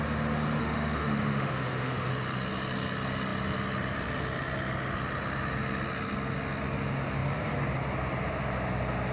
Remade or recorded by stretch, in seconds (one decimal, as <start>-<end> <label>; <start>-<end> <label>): 0.0-0.6 recorded; 0.6-2.1 remade; 2.1-9.1 recorded

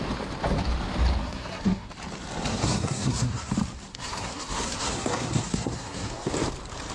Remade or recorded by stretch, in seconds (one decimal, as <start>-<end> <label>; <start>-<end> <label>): 0.0-1.2 recorded; 1.2-1.9 remade; 1.9-2.5 recorded; 2.5-3.5 remade; 3.5-3.9 recorded; 3.9-6.3 remade; 6.3-6.9 recorded

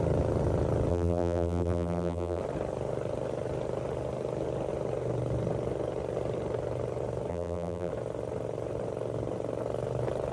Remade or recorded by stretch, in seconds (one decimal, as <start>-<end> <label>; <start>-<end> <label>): 0.0-0.9 recorded; 0.9-2.4 remade; 2.4-7.3 recorded; 7.3-7.9 remade; 7.9-10.3 recorded

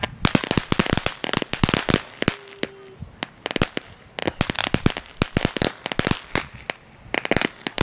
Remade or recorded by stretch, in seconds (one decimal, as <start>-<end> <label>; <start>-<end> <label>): 0.0-7.8 recorded

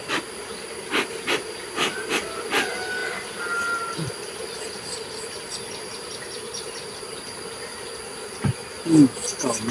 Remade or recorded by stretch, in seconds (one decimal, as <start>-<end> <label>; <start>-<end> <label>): 0.0-3.0 recorded; 3.0-8.0 remade; 8.0-9.7 recorded

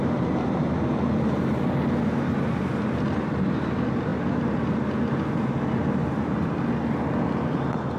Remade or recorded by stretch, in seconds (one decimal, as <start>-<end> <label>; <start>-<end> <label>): 0.0-8.0 recorded

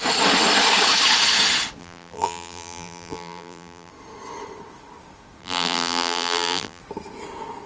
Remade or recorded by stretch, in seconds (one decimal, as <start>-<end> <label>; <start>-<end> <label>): 0.0-1.8 recorded; 1.8-3.9 remade; 3.9-5.4 recorded; 5.4-6.8 remade; 6.8-7.7 recorded

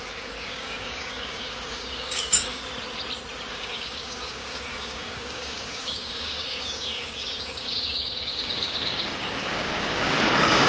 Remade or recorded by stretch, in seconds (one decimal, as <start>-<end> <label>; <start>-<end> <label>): 0.0-2.6 remade; 2.6-3.5 recorded; 3.5-10.7 remade